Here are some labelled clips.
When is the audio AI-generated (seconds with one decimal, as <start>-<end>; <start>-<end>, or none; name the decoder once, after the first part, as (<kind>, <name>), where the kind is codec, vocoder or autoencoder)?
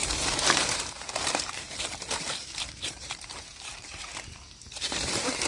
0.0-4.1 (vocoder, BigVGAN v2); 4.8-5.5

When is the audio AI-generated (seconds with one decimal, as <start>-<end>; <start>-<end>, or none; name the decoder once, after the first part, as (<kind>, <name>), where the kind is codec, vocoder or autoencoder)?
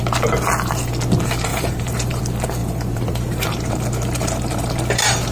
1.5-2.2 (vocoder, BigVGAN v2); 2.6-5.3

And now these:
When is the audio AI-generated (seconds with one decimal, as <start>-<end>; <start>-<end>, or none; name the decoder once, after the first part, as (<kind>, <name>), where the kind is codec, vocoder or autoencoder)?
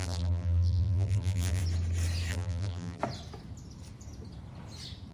0.0-1.6 (vocoder, BigVGAN v2); 2.3-3.0